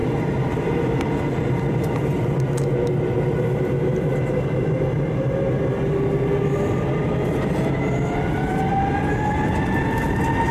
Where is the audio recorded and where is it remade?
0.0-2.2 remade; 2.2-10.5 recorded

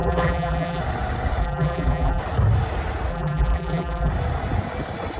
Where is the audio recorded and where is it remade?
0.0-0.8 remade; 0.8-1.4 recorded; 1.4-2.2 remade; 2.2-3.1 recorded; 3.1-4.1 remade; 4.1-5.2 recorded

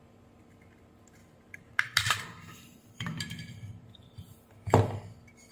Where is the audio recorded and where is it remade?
0.0-1.2 recorded; 1.2-4.5 remade; 4.5-5.5 recorded

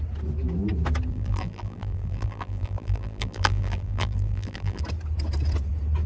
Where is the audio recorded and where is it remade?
0.0-1.1 recorded; 1.1-4.8 remade; 4.8-6.1 recorded